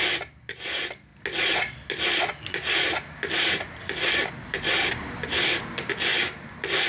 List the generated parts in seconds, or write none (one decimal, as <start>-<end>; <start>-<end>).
none